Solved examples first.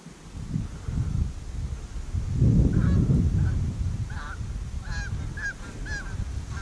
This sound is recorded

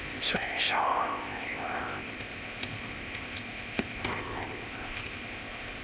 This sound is remade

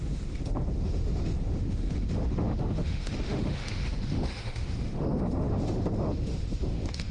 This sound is remade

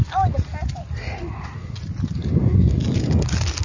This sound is recorded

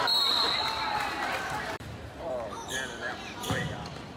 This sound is remade